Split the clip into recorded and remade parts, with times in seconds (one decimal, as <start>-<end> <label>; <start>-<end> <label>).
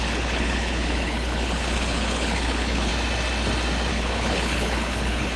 0.0-2.9 remade; 2.9-3.9 recorded; 3.9-5.4 remade